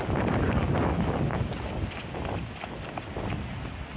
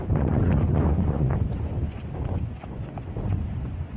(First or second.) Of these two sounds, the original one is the first